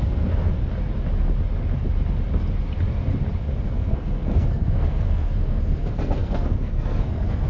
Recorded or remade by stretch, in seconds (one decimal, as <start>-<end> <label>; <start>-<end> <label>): 0.0-0.6 remade; 0.6-3.7 recorded; 3.7-7.5 remade